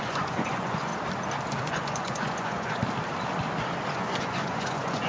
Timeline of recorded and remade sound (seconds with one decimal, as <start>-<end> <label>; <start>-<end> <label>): 0.0-0.9 remade; 0.9-1.6 recorded; 1.6-2.8 remade; 2.8-3.9 recorded; 3.9-5.1 remade